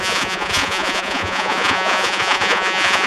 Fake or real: fake